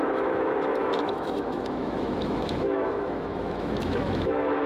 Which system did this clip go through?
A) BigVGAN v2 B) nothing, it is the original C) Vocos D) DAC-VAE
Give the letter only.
D